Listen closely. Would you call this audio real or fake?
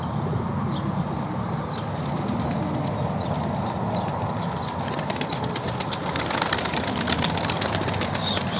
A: real